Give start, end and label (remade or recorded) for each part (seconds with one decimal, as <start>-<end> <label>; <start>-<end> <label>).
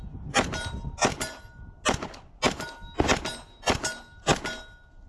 0.0-5.1 recorded